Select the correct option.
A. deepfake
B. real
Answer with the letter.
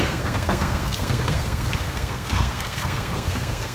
A